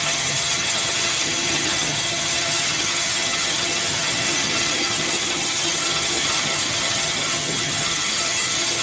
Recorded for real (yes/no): no